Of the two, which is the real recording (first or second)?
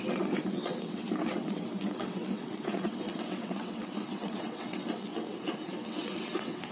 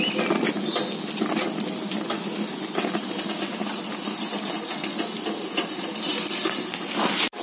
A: second